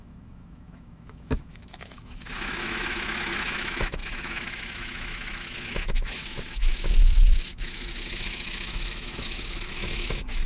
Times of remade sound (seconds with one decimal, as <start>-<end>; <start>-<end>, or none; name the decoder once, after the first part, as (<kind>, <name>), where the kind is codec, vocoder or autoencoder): 0.0-10.5 (autoencoder, DAC-VAE)